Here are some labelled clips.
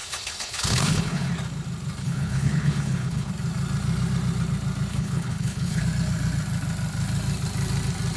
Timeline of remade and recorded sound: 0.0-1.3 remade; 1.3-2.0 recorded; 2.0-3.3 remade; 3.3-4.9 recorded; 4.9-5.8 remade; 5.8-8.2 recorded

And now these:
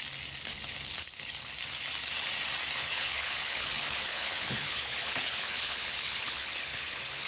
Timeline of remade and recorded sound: 0.0-0.5 recorded; 0.5-1.5 remade; 1.5-2.8 recorded; 2.8-7.3 remade